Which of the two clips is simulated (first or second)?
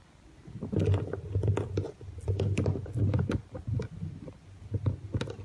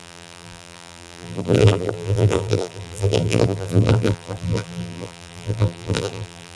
second